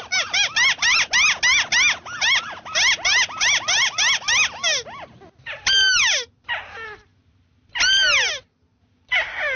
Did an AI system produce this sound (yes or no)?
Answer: no